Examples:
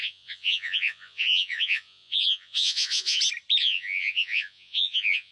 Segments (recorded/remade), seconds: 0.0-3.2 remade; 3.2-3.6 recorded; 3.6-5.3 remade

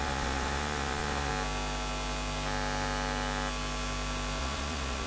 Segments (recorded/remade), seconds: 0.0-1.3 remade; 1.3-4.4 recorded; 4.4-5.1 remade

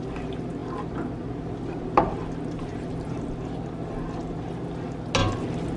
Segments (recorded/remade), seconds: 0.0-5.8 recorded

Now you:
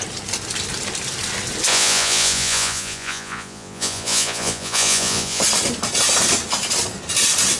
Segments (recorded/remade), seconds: 0.0-1.7 recorded; 1.7-5.4 remade; 5.4-7.6 recorded